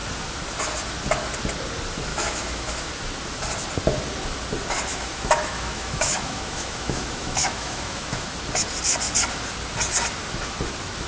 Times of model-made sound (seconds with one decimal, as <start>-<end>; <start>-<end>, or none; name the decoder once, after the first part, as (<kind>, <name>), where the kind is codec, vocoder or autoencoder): 2.1-2.9 (autoencoder, DAC-VAE); 4.9-8.3